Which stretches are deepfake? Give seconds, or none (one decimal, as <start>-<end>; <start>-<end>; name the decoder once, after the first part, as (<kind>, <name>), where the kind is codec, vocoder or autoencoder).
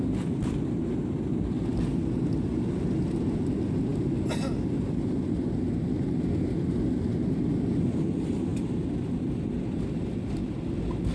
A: none